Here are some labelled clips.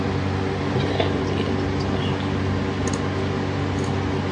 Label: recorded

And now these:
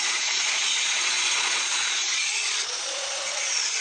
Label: remade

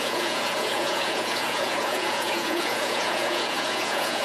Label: remade